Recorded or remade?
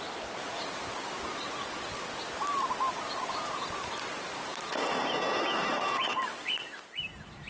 recorded